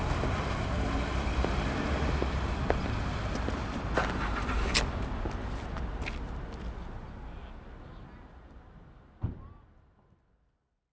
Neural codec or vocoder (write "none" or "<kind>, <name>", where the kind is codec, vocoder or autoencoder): none